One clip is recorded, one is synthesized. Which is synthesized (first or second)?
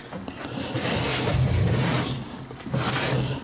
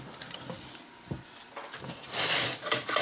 second